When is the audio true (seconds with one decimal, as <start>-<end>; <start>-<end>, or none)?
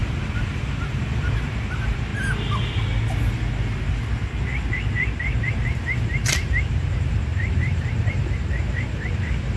2.1-5.5